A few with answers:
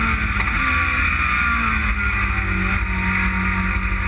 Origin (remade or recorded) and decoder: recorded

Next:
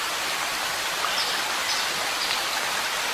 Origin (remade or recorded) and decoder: remade, vocoder, BigVGAN v2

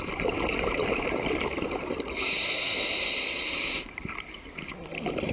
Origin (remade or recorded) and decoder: remade, vocoder, BigVGAN v2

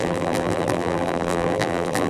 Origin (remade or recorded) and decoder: remade, vocoder, BigVGAN v2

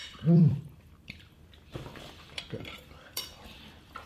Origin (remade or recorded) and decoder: remade, vocoder, BigVGAN v2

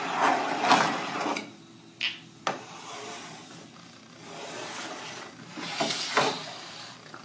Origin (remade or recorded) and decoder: recorded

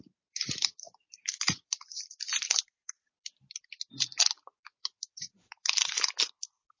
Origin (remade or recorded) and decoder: remade, vocoder, BigVGAN v2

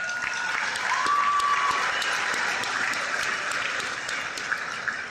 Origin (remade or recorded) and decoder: remade, vocoder, BigVGAN v2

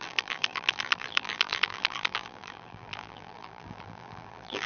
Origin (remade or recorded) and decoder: remade, vocoder, BigVGAN v2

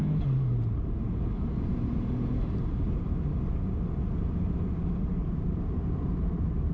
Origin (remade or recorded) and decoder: remade, vocoder, BigVGAN v2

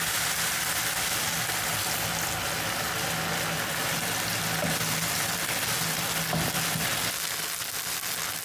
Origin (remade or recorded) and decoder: recorded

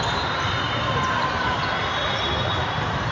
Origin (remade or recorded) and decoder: remade, vocoder, BigVGAN v2